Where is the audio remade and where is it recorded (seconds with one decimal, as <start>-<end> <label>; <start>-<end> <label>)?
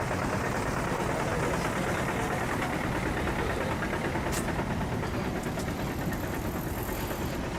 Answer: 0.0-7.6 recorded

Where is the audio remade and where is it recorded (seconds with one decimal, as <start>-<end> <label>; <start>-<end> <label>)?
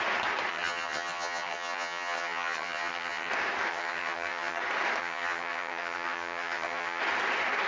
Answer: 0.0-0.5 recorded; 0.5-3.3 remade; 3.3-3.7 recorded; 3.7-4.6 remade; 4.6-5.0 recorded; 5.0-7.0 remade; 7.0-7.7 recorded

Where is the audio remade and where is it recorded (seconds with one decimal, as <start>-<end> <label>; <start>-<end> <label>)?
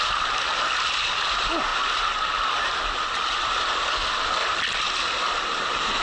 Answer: 0.0-6.0 recorded